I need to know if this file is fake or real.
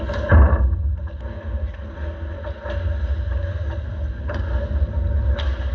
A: real